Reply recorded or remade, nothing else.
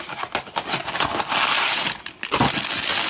recorded